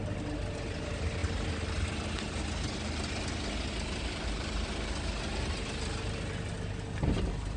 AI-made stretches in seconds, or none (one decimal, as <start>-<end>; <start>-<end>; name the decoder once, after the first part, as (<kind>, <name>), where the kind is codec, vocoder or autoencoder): none